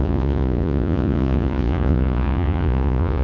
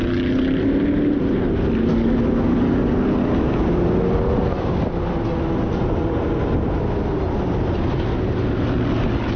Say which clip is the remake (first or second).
first